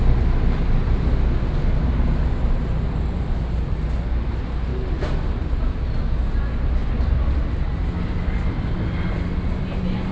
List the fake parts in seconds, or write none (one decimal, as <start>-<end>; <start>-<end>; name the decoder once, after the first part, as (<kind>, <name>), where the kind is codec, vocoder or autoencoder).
none